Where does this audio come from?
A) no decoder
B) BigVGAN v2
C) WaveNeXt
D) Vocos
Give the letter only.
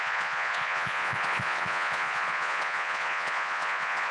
D